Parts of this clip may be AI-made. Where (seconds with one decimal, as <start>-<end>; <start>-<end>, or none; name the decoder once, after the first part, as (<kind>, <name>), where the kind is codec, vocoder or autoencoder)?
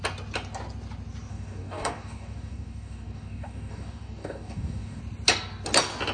1.3-5.0 (codec, DAC)